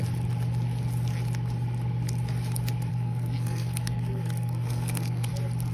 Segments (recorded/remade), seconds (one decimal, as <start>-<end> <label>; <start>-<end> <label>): 0.0-2.9 recorded; 2.9-5.3 remade; 5.3-5.7 recorded